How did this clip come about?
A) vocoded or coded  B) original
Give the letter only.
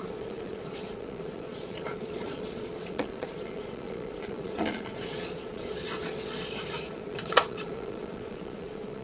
A